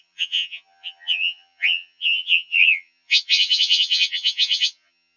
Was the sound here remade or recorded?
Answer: remade